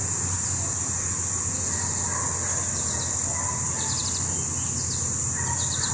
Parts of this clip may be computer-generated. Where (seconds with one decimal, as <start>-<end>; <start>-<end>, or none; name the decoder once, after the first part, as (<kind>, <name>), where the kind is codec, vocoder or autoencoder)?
none